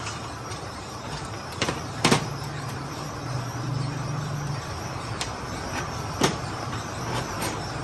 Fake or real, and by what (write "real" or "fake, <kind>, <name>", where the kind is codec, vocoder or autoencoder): fake, vocoder, BigVGAN v2